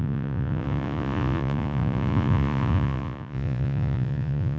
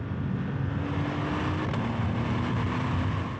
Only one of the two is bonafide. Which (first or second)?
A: second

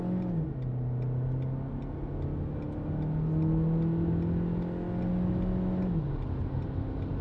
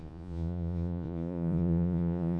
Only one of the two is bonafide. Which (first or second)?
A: first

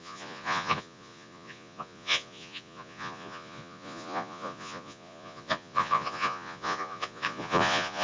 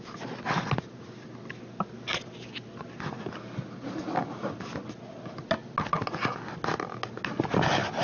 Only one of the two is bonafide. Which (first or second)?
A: second